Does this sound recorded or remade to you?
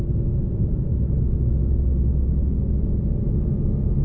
recorded